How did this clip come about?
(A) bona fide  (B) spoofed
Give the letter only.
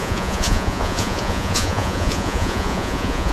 B